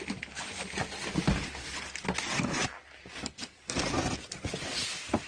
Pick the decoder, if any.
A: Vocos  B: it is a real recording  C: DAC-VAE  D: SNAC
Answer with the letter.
B